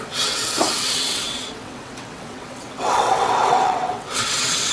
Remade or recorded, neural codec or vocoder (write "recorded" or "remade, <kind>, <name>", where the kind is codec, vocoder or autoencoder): remade, vocoder, WaveNeXt